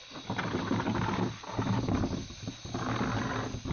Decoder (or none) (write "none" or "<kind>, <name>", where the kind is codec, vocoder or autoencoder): none